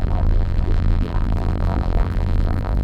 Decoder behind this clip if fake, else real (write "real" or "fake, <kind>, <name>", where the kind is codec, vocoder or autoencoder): fake, vocoder, BigVGAN v2